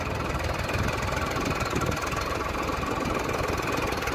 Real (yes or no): yes